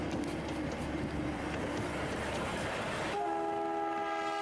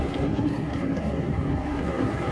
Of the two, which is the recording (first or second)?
first